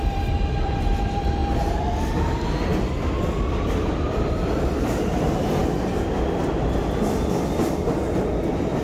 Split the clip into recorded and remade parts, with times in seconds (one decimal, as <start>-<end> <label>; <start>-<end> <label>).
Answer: 0.0-1.4 remade; 1.4-3.6 recorded; 3.6-8.8 remade